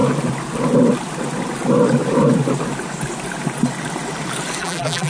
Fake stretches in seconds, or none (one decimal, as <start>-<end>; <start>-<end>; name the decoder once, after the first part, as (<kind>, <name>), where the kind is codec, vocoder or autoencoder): 4.6-5.1 (vocoder, BigVGAN v2)